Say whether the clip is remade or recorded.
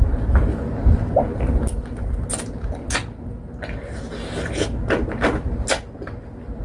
recorded